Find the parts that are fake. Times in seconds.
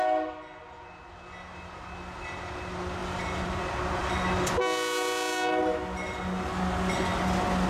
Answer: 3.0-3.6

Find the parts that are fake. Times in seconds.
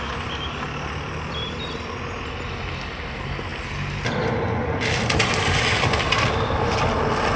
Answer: none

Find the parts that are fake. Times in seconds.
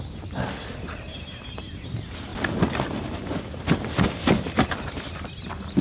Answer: none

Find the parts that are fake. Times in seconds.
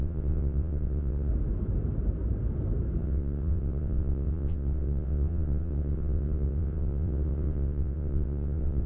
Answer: 0.0-1.3; 3.0-8.9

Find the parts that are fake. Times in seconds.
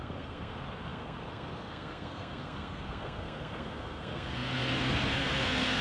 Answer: 0.0-5.8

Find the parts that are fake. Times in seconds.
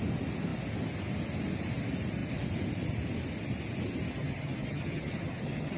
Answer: 4.2-5.8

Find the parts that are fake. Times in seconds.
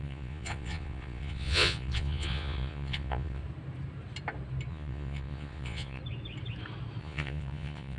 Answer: 0.0-3.4; 4.7-6.0; 7.0-8.0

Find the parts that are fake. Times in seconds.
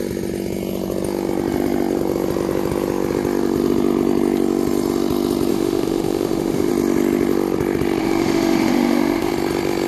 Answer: 5.5-6.7; 8.0-9.3